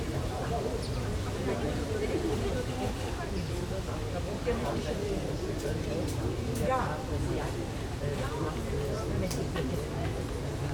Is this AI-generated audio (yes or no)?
no